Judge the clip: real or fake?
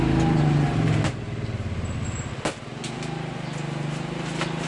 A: real